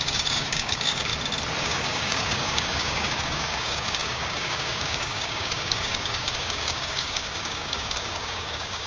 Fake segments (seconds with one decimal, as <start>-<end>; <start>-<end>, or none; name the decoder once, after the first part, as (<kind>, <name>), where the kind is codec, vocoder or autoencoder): 0.0-1.1 (codec, DAC); 1.6-8.9

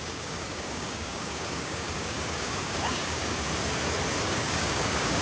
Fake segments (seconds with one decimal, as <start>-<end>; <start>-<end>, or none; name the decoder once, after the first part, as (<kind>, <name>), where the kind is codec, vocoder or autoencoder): 0.0-3.5 (codec, DAC); 4.2-5.2

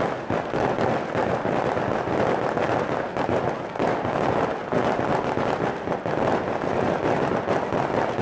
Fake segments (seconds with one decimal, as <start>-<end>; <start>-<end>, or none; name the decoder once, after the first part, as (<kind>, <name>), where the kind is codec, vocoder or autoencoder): none

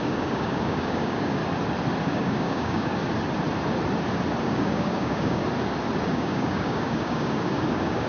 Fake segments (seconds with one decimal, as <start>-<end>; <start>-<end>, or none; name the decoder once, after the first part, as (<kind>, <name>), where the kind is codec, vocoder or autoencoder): 0.0-1.4 (codec, DAC); 2.0-3.0; 4.4-5.4; 6.0-8.1